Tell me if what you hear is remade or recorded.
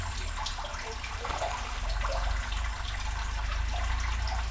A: recorded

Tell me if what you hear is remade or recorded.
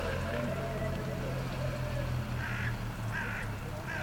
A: recorded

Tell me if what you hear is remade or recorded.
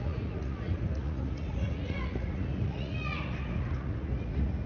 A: remade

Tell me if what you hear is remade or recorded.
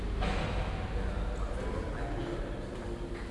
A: recorded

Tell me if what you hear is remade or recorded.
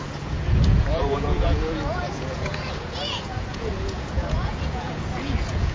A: remade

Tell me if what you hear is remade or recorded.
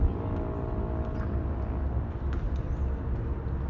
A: recorded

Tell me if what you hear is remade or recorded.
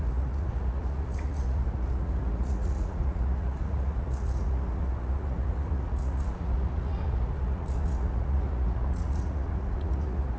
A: remade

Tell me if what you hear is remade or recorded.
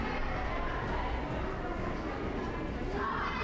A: recorded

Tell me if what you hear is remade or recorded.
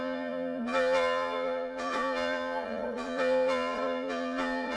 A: remade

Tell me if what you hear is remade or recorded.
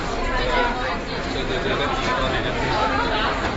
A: recorded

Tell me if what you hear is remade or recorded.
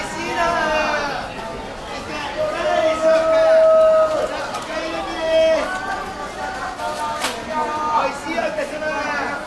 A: recorded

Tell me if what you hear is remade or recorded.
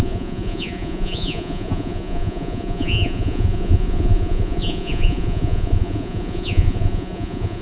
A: remade